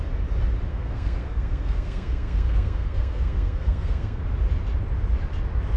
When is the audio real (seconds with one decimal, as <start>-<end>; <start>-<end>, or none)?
0.0-0.7; 4.2-5.8

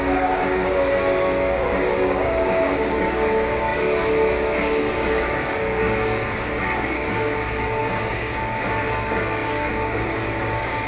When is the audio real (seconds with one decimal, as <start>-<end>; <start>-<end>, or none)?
none